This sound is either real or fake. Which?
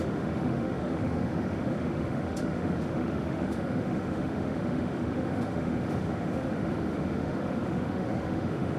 fake